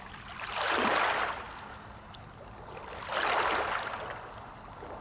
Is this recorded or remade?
recorded